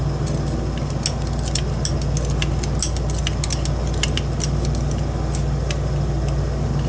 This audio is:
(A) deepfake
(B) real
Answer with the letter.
B